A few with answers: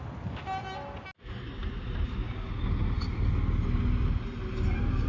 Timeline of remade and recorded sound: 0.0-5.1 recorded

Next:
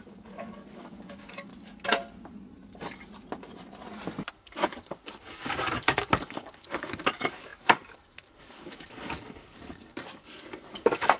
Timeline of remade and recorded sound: 0.0-1.5 remade; 1.5-4.3 recorded; 4.3-11.2 remade

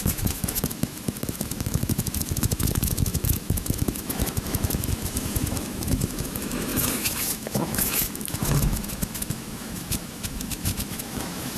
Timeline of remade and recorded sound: 0.0-11.6 remade

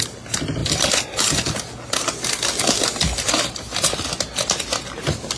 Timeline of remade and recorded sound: 0.0-5.4 recorded